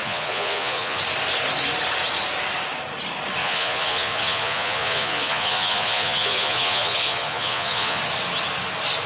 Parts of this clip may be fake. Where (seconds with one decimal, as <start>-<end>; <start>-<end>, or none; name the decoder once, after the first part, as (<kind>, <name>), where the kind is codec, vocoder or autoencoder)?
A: 0.0-1.0 (vocoder, Vocos); 3.4-8.0